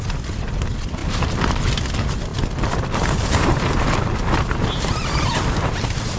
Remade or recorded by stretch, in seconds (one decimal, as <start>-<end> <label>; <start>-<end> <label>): 0.0-1.0 recorded; 1.0-1.8 remade; 1.8-6.2 recorded